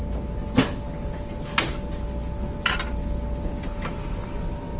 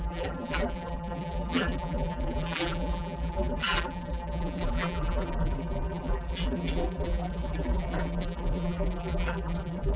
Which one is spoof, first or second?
second